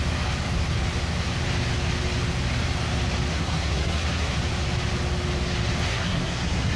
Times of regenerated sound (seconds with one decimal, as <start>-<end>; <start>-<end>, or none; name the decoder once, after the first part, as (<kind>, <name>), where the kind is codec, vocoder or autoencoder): 3.3-4.3 (codec, SNAC); 5.9-6.8